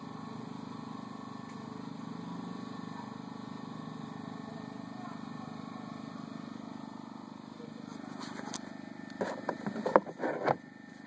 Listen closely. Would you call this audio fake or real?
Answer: fake